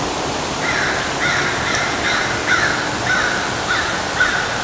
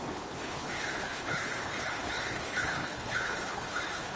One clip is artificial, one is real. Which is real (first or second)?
first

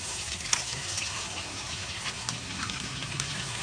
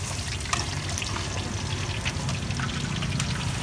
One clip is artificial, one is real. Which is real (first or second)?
second